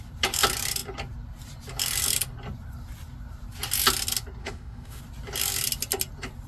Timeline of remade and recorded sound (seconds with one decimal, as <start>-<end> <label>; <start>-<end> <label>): 0.0-4.4 recorded; 4.4-5.0 remade; 5.0-6.5 recorded

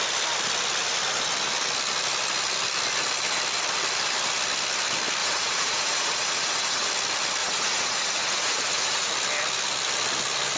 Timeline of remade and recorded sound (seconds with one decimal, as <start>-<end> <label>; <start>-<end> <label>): 0.0-5.2 recorded; 5.2-6.9 remade; 6.9-7.4 recorded; 7.4-9.1 remade; 9.1-10.6 recorded

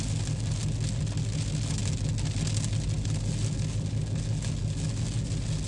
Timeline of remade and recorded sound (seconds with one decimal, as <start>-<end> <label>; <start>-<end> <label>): 0.0-5.7 recorded